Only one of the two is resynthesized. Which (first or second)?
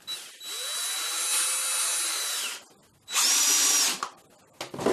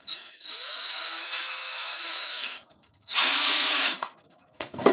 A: second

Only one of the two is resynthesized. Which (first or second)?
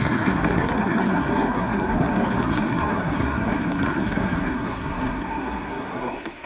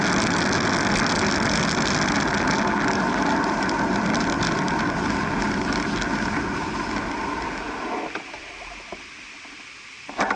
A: first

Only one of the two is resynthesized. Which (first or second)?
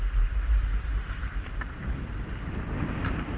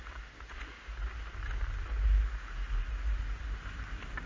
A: first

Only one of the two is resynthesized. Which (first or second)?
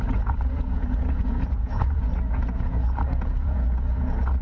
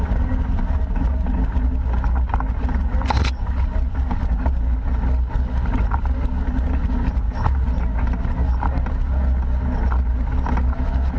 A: first